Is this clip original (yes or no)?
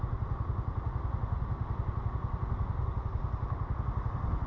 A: yes